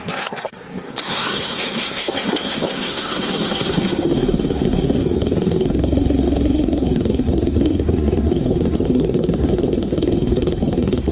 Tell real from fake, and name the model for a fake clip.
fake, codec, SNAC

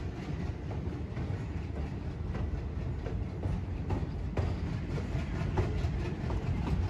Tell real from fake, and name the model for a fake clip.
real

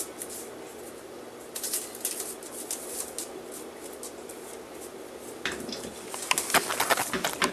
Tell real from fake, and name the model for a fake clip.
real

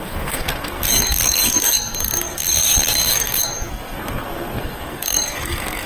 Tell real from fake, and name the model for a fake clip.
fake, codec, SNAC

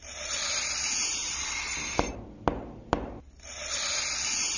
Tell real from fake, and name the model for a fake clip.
real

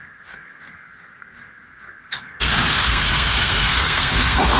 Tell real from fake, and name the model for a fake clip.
fake, codec, SNAC